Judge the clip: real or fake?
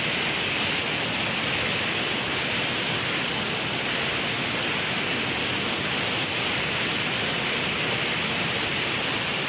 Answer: real